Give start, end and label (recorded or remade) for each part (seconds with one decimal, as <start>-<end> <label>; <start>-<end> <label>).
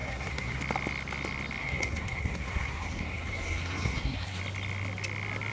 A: 0.0-0.6 remade; 0.6-1.6 recorded; 1.6-4.4 remade; 4.4-5.5 recorded